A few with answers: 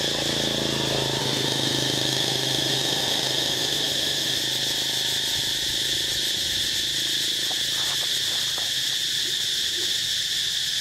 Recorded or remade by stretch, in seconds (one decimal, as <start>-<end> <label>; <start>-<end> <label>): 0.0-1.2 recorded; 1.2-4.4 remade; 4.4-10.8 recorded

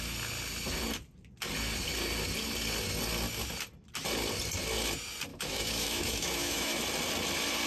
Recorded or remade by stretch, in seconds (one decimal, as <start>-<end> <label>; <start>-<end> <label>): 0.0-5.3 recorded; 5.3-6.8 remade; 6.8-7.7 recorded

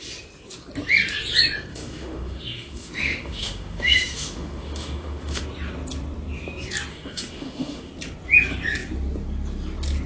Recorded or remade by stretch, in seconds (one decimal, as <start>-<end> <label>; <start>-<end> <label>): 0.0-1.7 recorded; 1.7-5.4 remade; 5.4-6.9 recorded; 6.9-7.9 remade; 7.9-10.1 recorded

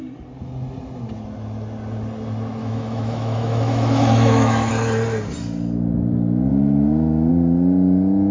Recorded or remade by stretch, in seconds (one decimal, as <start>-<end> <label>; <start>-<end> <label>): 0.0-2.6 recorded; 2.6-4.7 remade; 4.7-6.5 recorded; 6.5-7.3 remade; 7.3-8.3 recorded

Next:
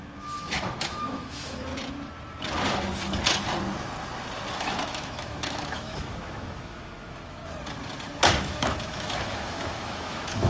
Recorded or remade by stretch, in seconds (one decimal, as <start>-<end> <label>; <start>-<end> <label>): 0.0-1.7 remade; 1.7-4.5 recorded; 4.5-7.4 remade; 7.4-8.4 recorded; 8.4-10.5 remade

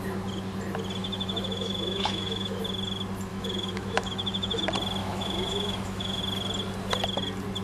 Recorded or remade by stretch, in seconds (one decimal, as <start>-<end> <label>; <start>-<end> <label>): 0.0-1.0 recorded; 1.0-2.6 remade; 2.6-3.3 recorded; 3.3-4.6 remade; 4.6-5.0 recorded; 5.0-6.2 remade; 6.2-7.6 recorded

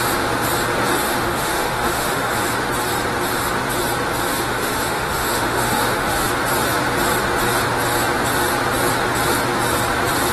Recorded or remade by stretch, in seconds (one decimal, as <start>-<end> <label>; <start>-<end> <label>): 0.0-1.0 recorded; 1.0-2.4 remade; 2.4-4.3 recorded; 4.3-6.3 remade; 6.3-10.3 recorded

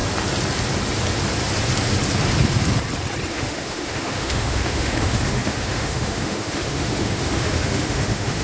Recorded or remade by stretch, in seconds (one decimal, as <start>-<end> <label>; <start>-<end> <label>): 0.0-3.3 recorded; 3.3-8.4 remade